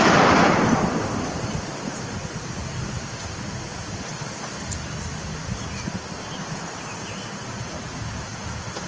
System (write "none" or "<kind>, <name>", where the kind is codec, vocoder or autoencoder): none